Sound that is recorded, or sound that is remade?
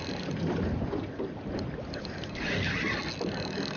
recorded